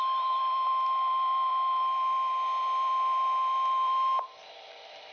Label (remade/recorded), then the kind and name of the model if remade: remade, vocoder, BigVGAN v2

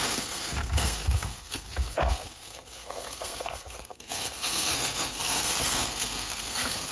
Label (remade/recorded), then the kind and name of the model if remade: remade, codec, SNAC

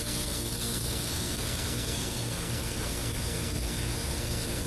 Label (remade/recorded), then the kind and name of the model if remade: remade, codec, SNAC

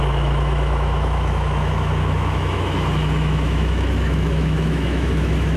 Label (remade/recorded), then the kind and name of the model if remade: remade, autoencoder, DAC-VAE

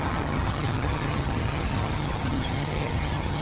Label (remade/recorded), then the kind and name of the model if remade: remade, vocoder, HiFi-GAN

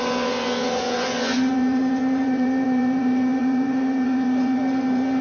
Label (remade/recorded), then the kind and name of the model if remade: remade, vocoder, Vocos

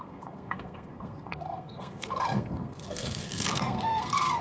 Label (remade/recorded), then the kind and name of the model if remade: remade, codec, SNAC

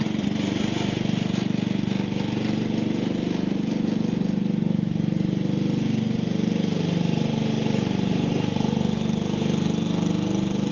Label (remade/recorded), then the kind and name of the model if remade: recorded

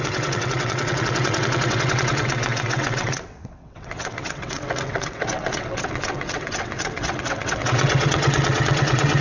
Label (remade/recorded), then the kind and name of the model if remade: remade, vocoder, WaveNeXt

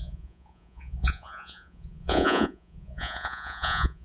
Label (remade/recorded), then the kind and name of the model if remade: remade, vocoder, Vocos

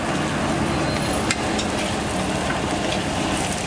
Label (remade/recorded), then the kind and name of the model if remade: recorded